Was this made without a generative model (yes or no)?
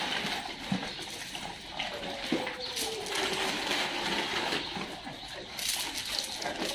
yes